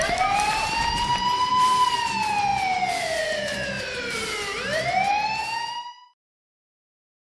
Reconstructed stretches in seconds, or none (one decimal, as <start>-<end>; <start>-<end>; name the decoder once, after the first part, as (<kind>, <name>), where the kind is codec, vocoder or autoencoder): 0.0-2.5 (vocoder, BigVGAN v2); 3.0-7.2